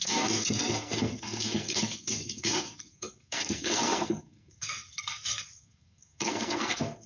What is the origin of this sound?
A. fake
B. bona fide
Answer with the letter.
A